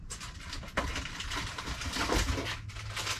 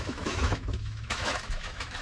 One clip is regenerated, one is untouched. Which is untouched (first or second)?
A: first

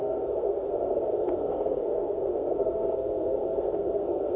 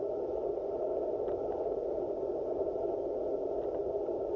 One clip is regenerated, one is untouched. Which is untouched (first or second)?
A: second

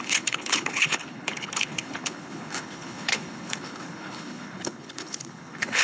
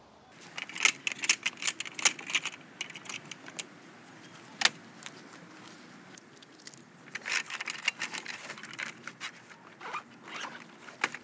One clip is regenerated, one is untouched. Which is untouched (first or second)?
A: second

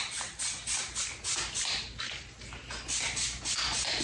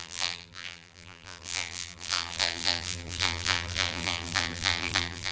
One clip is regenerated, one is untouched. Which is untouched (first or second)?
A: first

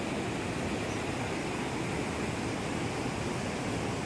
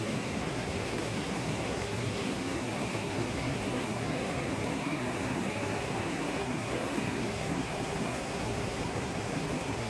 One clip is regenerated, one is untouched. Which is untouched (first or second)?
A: first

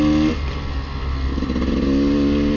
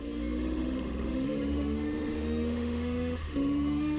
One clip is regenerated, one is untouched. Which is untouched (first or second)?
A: first